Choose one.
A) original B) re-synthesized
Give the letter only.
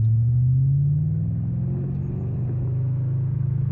A